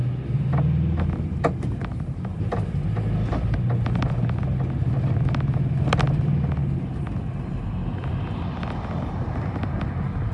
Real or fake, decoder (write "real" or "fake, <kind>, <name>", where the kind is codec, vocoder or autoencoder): real